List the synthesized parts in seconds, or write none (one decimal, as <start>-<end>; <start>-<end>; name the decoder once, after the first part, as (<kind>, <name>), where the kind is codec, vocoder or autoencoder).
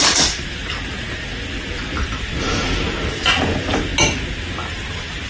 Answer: 0.0-0.6 (vocoder, BigVGAN v2); 2.2-3.9; 4.7-5.3